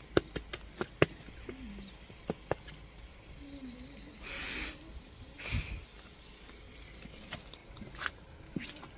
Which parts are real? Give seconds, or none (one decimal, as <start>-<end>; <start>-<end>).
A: 0.0-9.0